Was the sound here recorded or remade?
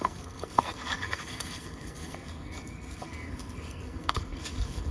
remade